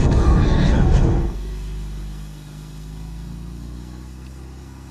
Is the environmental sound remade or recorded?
remade